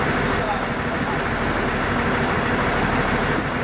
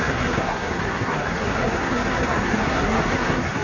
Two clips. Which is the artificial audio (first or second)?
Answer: second